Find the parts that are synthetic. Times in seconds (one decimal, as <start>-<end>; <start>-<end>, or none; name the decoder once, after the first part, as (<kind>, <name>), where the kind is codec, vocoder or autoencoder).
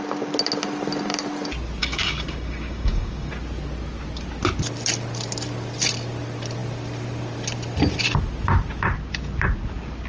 1.8-3.3 (codec, DAC)